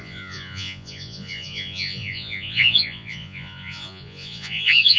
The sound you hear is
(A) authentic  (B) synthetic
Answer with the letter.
B